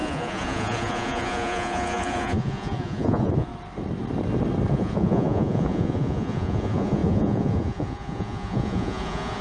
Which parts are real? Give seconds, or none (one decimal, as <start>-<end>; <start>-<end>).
3.5-4.7